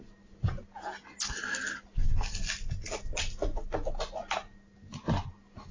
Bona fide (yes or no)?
yes